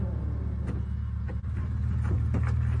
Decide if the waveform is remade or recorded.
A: recorded